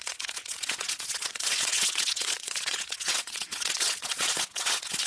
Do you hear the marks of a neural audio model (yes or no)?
yes